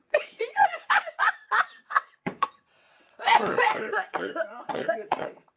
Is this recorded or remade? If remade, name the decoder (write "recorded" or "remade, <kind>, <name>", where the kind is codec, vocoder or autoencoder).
remade, vocoder, WaveNeXt